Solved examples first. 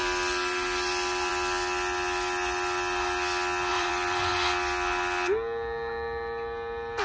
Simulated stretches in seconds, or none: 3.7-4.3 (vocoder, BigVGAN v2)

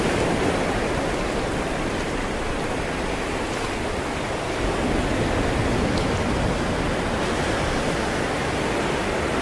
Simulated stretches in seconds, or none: none

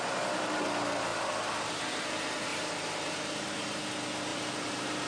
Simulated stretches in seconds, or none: 2.5-3.8 (vocoder, BigVGAN v2); 4.3-5.1

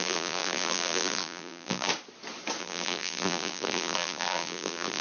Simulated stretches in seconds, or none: 0.0-1.9 (vocoder, BigVGAN v2); 2.6-5.0